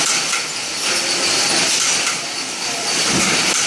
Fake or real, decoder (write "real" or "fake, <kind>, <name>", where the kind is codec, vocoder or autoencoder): real